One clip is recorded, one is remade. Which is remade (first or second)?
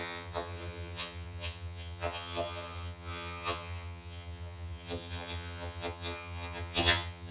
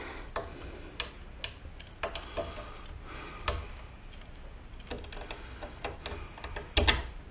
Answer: first